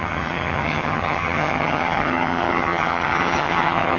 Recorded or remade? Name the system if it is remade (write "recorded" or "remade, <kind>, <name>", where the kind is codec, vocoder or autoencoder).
remade, vocoder, HiFi-GAN